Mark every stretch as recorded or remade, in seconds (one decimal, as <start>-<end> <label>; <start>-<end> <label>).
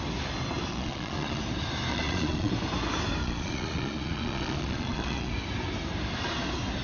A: 0.0-0.7 recorded; 0.7-1.4 remade; 1.4-1.9 recorded; 1.9-2.5 remade; 2.5-3.2 recorded; 3.2-5.3 remade; 5.3-6.8 recorded